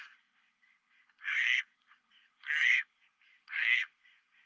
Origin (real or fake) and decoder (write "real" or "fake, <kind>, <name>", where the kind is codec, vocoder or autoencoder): fake, codec, SNAC